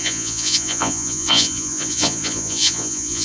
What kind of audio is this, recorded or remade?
remade